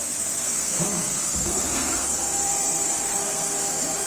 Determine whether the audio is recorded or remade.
remade